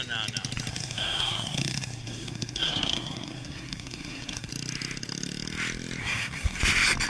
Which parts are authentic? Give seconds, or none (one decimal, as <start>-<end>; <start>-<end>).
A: 0.0-0.7; 4.5-6.0; 6.6-7.1